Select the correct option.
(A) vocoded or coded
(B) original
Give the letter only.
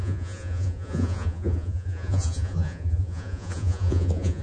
A